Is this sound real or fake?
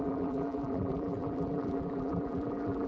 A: fake